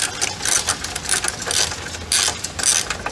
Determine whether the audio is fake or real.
real